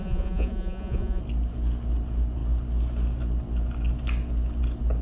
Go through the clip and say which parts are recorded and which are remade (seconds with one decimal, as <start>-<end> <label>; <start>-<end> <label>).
0.0-1.2 remade; 1.2-5.0 recorded

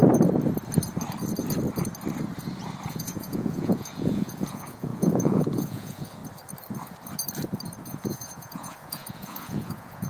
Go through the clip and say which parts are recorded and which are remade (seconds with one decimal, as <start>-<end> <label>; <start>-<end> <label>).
0.0-2.9 recorded; 2.9-6.2 remade; 6.2-7.8 recorded; 7.8-10.1 remade

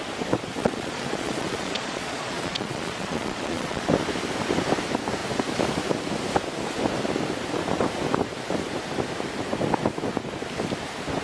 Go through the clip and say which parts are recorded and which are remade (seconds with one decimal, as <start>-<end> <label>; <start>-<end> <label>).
0.0-0.6 recorded; 0.6-3.9 remade; 3.9-11.2 recorded

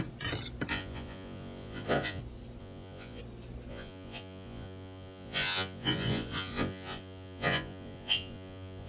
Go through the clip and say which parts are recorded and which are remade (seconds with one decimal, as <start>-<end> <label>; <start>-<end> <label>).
0.0-0.7 recorded; 0.7-2.2 remade; 2.2-2.6 recorded; 2.6-3.2 remade; 3.2-3.7 recorded; 3.7-8.9 remade

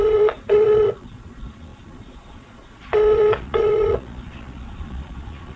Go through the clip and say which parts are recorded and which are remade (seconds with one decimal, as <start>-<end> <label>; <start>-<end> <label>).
0.0-5.6 remade

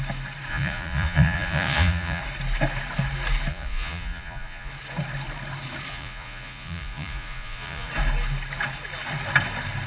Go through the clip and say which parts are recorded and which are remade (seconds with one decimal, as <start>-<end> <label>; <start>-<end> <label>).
0.0-0.5 recorded; 0.5-2.2 remade; 2.2-3.5 recorded; 3.5-4.7 remade; 4.7-5.9 recorded; 5.9-7.9 remade; 7.9-9.9 recorded